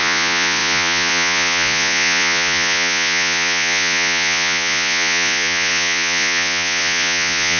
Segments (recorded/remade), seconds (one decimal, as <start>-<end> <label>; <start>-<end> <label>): 0.0-7.6 remade